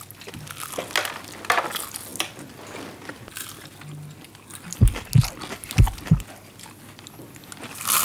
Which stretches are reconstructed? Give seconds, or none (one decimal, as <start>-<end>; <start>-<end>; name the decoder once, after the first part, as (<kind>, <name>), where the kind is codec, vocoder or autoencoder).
none

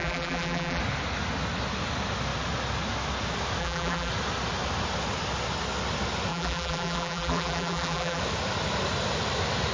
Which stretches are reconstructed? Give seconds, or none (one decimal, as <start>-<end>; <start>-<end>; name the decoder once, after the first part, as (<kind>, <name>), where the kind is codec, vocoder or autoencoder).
0.0-0.8 (vocoder, BigVGAN v2); 3.6-4.1; 6.3-8.2

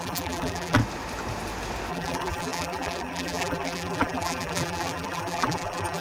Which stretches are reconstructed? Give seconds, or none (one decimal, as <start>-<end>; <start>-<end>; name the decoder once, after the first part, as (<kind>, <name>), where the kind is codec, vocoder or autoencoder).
0.0-0.8 (vocoder, BigVGAN v2); 1.9-6.0

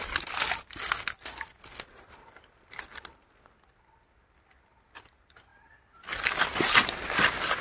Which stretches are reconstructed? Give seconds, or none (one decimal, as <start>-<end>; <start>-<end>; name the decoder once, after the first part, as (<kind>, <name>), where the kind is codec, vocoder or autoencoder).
none

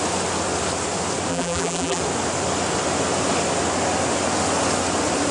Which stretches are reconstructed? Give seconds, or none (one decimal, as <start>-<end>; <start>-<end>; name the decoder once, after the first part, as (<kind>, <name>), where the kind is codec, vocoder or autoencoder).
1.3-2.0 (vocoder, BigVGAN v2)

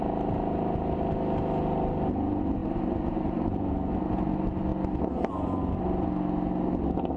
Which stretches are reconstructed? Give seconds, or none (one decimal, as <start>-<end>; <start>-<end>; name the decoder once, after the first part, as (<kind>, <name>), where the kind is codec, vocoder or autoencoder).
none